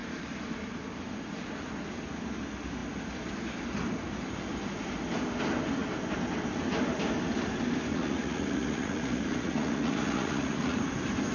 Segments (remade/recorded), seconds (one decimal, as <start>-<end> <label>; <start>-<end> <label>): 0.0-7.9 recorded; 7.9-10.8 remade; 10.8-11.3 recorded